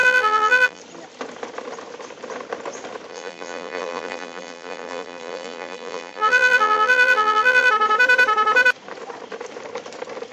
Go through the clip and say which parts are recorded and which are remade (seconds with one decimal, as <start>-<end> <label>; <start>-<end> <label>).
0.0-0.8 remade; 0.8-3.1 recorded; 3.1-7.7 remade; 7.7-10.3 recorded